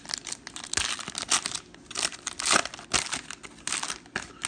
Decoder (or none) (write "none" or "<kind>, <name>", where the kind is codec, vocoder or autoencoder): none